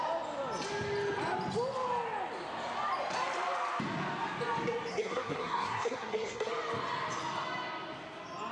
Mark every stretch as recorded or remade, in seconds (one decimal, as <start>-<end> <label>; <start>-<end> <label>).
0.0-4.9 recorded; 4.9-6.5 remade; 6.5-8.5 recorded

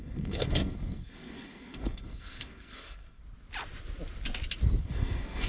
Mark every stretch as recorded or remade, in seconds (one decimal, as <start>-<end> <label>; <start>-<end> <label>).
0.0-3.2 remade; 3.2-4.8 recorded; 4.8-5.5 remade

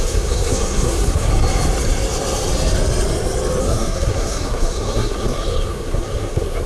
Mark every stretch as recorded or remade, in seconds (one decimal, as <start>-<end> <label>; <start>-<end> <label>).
0.0-1.3 remade; 1.3-3.6 recorded; 3.6-6.7 remade

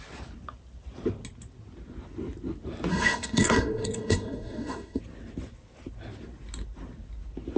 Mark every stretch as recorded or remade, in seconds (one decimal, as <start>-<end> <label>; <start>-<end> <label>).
0.0-2.9 recorded; 2.9-5.0 remade; 5.0-7.6 recorded

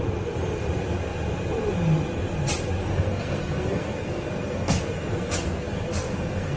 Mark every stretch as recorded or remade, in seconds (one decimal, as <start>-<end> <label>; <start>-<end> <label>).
0.0-2.8 recorded; 2.8-6.6 remade

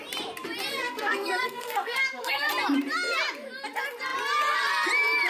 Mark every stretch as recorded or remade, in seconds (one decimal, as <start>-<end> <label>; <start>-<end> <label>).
0.0-0.7 recorded; 0.7-2.5 remade; 2.5-5.3 recorded

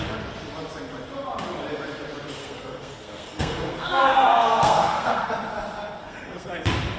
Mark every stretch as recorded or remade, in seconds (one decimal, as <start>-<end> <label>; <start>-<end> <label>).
0.0-2.4 recorded; 2.4-5.3 remade; 5.3-6.0 recorded; 6.0-6.5 remade; 6.5-7.0 recorded